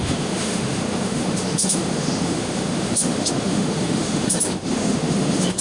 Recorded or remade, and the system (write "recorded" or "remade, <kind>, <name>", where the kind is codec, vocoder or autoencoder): remade, autoencoder, DAC-VAE